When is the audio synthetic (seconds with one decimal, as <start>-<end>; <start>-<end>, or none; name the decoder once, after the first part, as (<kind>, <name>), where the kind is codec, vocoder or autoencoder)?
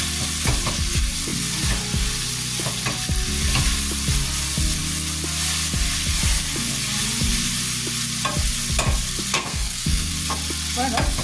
9.3-10.1 (codec, SNAC)